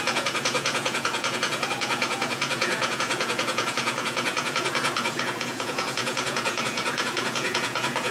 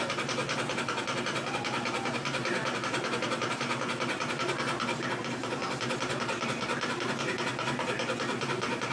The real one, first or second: second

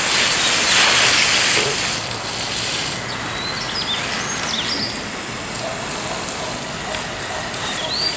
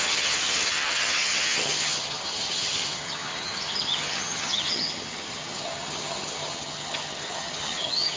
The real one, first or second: first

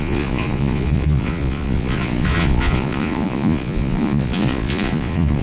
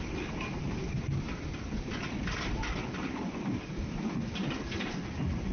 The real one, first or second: second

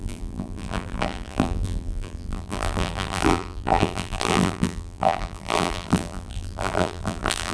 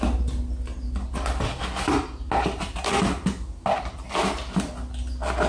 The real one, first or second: second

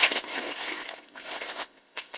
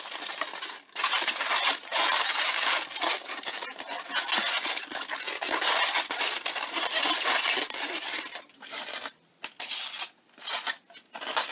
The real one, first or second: second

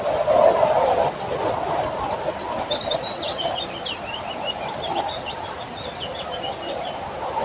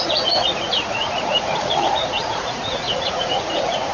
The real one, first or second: first